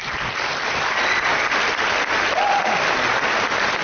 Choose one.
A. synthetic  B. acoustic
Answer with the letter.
A